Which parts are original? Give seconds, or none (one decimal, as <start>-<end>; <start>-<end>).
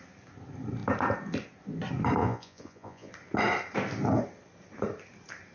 0.0-2.2; 3.1-5.5